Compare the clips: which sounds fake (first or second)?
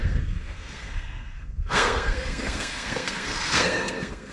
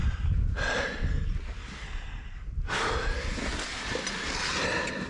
first